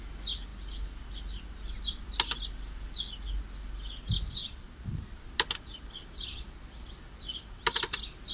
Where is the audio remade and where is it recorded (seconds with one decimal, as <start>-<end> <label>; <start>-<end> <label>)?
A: 0.0-0.5 recorded; 0.5-2.5 remade; 2.5-8.3 recorded

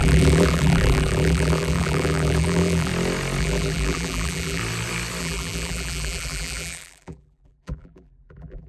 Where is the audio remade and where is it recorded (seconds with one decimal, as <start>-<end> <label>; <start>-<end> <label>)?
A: 0.0-2.9 remade; 2.9-3.4 recorded; 3.4-4.6 remade; 4.6-5.2 recorded; 5.2-8.7 remade

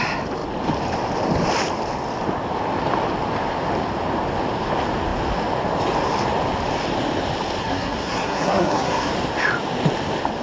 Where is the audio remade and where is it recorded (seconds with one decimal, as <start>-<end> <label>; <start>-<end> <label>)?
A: 0.0-7.6 recorded; 7.6-9.1 remade; 9.1-10.4 recorded

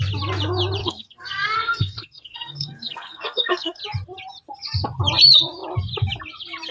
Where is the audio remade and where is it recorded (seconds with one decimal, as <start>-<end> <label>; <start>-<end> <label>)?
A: 0.0-0.8 recorded; 0.8-3.8 remade; 3.8-6.7 recorded

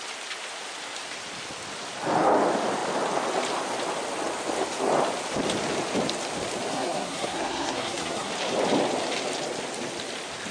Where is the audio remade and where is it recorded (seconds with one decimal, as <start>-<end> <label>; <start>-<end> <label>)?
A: 0.0-6.7 recorded; 6.7-8.3 remade; 8.3-10.5 recorded

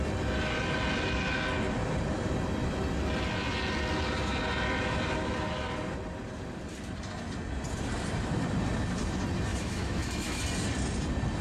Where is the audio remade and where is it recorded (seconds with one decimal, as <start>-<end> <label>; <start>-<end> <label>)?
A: 0.0-9.5 recorded; 9.5-10.4 remade; 10.4-11.4 recorded

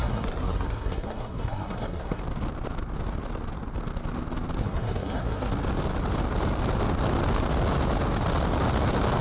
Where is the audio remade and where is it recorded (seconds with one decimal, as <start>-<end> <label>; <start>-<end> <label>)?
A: 0.0-2.2 remade; 2.2-4.6 recorded; 4.6-5.5 remade; 5.5-9.2 recorded

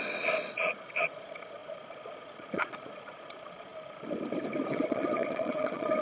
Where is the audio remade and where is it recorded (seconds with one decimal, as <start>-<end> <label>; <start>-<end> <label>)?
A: 0.0-3.7 remade; 3.7-4.7 recorded; 4.7-6.0 remade